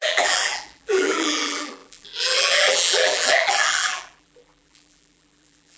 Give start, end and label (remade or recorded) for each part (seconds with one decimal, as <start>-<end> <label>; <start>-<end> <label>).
0.0-5.8 remade

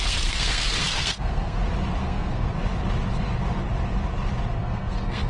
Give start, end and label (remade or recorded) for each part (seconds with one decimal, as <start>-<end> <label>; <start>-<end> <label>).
0.0-1.6 remade; 1.6-2.0 recorded; 2.0-2.5 remade; 2.5-4.6 recorded; 4.6-5.3 remade

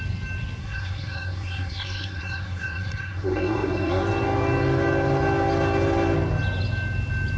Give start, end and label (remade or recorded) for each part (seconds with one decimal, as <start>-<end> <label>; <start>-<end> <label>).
0.0-0.6 recorded; 0.6-4.0 remade; 4.0-7.4 recorded

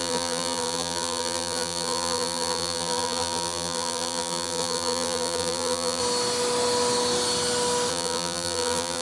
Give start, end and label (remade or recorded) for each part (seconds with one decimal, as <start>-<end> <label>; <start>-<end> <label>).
0.0-6.0 remade; 6.0-7.9 recorded; 7.9-9.0 remade

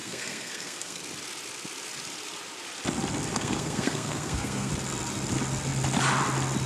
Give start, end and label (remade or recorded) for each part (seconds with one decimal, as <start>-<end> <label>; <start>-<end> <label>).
0.0-1.0 remade; 1.0-3.3 recorded; 3.3-4.7 remade; 4.7-6.7 recorded

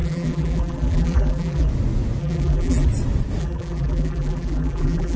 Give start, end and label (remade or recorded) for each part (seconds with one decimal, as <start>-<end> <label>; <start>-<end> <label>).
0.0-1.7 remade; 1.7-2.2 recorded; 2.2-2.9 remade; 2.9-3.4 recorded; 3.4-5.2 remade

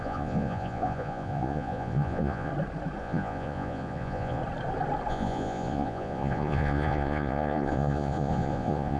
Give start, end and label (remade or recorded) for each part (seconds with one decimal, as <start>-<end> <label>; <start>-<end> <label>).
0.0-2.5 remade; 2.5-3.0 recorded; 3.0-4.4 remade; 4.4-5.1 recorded; 5.1-9.0 remade

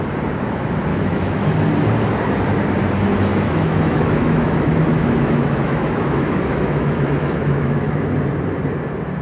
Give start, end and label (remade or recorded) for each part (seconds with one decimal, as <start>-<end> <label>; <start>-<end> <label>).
0.0-0.9 recorded; 0.9-1.5 remade; 1.5-3.3 recorded; 3.3-8.0 remade; 8.0-9.2 recorded